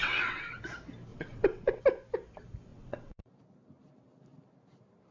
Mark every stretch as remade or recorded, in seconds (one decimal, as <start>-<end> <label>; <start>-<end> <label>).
0.0-0.6 remade; 0.6-1.1 recorded; 1.1-1.8 remade; 1.8-2.7 recorded; 2.7-3.3 remade; 3.3-5.1 recorded